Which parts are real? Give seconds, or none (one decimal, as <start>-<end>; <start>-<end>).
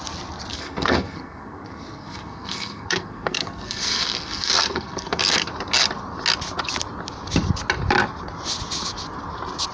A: 0.0-0.5; 5.5-9.7